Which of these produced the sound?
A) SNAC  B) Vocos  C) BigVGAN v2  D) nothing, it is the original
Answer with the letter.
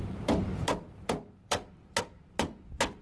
C